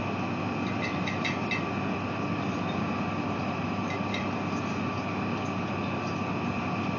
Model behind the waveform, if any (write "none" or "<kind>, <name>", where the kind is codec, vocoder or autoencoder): none